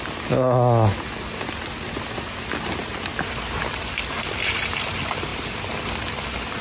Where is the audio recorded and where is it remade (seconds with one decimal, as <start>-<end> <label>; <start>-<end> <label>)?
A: 0.0-6.6 recorded